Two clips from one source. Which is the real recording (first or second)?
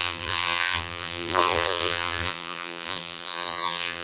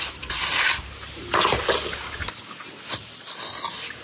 second